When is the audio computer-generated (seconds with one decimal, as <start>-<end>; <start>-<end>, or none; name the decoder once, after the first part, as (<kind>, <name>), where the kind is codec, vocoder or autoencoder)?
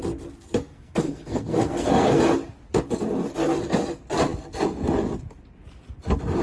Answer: 0.6-2.2 (codec, SNAC)